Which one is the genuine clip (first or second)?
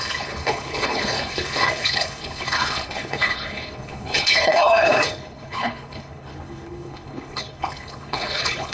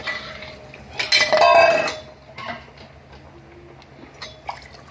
second